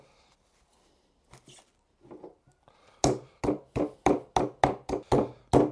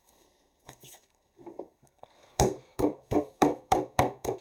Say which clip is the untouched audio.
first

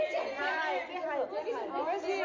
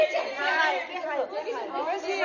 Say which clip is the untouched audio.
first